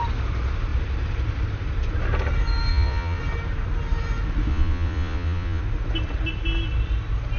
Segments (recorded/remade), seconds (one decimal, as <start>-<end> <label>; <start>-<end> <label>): 0.0-2.7 recorded; 2.7-3.2 remade; 3.2-4.5 recorded; 4.5-5.6 remade; 5.6-7.4 recorded